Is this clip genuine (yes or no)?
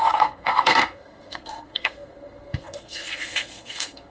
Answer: no